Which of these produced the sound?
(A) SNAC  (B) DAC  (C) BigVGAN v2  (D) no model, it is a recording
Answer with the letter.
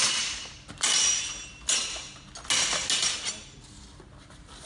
D